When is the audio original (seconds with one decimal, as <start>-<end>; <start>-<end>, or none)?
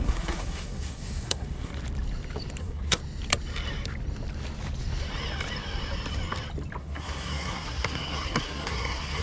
1.7-2.6; 3.0-6.8